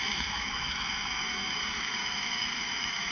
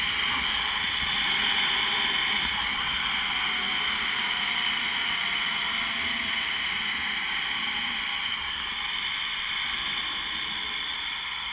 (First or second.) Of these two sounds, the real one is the second